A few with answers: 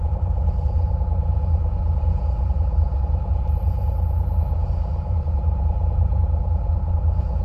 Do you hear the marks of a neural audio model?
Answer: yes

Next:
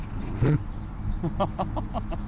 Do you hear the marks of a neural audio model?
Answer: no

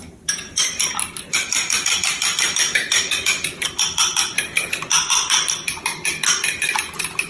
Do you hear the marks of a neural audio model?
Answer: yes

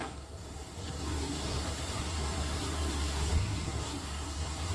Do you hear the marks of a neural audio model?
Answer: yes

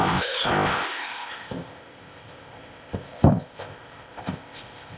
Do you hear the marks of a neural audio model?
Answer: yes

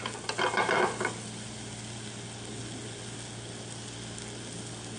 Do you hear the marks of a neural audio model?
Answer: no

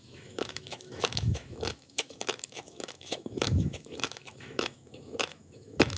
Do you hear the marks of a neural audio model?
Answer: yes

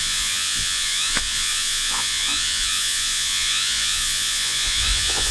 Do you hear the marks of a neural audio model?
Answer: yes